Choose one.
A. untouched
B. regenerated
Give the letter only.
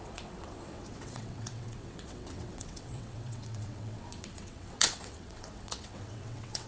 B